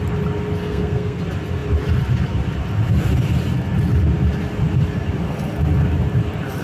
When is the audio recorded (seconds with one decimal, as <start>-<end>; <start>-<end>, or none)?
0.0-0.6; 1.2-6.6